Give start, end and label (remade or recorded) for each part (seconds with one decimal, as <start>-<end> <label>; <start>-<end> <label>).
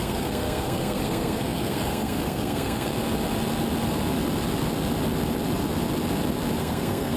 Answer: 0.0-2.9 remade; 2.9-6.6 recorded; 6.6-7.2 remade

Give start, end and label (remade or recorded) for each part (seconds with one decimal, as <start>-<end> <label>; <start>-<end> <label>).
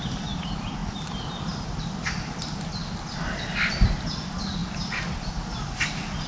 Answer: 0.0-6.3 recorded